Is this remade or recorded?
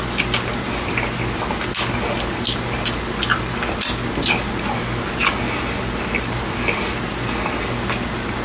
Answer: recorded